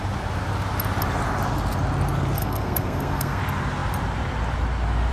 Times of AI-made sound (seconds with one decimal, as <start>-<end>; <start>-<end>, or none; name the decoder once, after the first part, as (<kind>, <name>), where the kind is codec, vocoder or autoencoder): 2.4-3.4 (codec, SNAC)